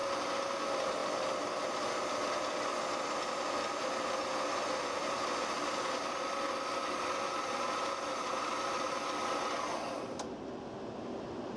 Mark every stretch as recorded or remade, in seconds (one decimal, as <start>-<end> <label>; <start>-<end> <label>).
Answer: 0.0-1.0 recorded; 1.0-1.9 remade; 1.9-2.7 recorded; 2.7-4.1 remade; 4.1-11.6 recorded